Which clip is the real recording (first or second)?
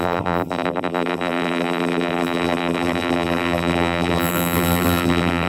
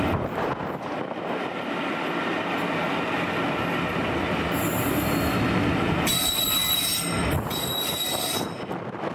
second